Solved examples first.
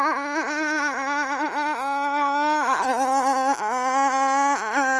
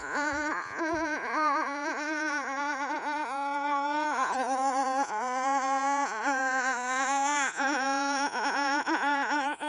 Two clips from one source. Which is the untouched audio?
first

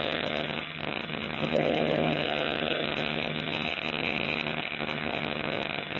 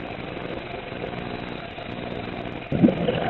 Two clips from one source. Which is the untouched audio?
second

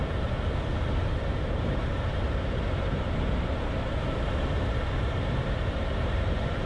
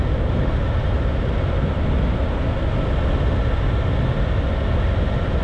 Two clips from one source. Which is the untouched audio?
second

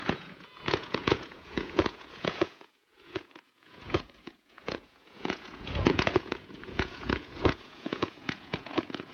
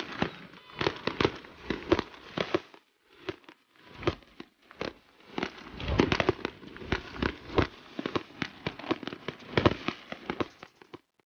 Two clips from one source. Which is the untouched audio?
second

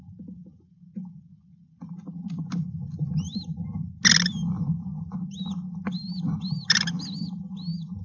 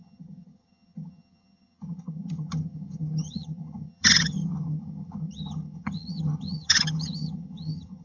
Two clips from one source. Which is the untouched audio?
first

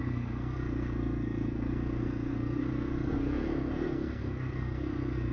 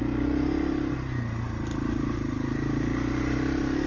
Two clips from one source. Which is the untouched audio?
second